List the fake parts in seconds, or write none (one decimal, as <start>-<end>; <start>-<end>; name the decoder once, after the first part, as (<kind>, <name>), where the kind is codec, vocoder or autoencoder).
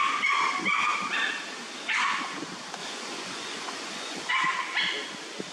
2.8-4.3 (vocoder, Vocos)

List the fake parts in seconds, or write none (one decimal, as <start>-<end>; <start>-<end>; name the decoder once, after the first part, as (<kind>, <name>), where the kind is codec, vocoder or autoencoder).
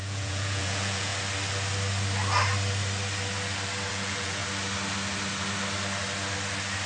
0.0-1.1 (vocoder, Vocos); 3.9-4.4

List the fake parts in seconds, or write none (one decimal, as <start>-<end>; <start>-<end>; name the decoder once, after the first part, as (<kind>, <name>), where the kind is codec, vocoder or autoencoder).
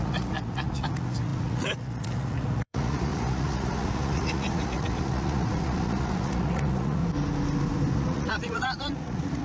0.0-7.0 (vocoder, Vocos); 7.9-9.4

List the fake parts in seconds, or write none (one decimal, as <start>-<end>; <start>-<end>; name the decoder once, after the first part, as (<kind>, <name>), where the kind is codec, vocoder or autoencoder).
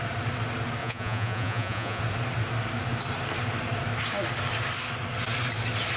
0.8-2.0 (vocoder, Vocos)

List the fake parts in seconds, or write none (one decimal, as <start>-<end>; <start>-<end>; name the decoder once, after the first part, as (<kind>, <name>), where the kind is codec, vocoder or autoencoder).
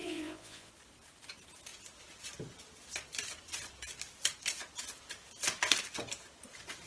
0.0-0.7 (vocoder, Vocos)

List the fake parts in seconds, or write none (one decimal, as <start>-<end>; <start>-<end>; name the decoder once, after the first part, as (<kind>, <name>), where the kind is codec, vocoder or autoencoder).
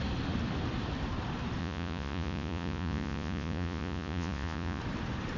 1.6-4.8 (vocoder, Vocos)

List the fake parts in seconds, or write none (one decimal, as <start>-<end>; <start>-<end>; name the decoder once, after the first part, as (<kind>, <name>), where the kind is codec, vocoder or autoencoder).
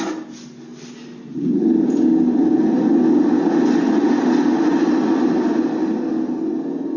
none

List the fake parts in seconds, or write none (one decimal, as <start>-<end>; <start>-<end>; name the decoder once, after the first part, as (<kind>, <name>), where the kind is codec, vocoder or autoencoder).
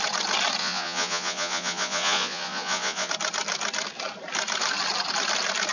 0.6-3.1 (vocoder, Vocos)